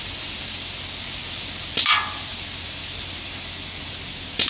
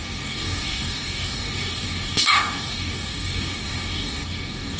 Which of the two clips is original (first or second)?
first